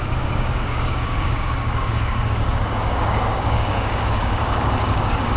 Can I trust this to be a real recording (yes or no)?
no